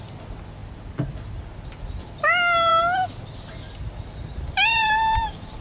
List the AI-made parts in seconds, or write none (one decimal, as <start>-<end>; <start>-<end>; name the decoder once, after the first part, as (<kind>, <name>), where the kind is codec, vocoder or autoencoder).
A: 4.8-5.6 (vocoder, BigVGAN v2)